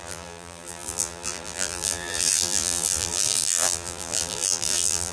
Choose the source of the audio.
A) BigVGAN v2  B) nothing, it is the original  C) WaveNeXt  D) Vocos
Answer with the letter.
A